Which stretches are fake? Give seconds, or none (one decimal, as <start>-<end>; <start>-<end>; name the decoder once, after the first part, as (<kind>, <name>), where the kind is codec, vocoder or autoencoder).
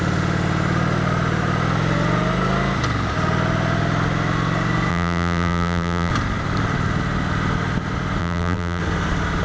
4.9-6.1 (vocoder, BigVGAN v2); 8.2-8.8